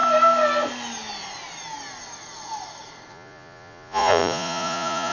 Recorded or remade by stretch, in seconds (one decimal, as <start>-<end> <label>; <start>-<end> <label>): 0.0-3.1 recorded; 3.1-5.1 remade